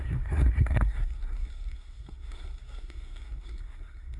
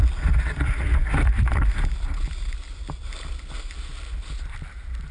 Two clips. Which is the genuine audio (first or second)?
second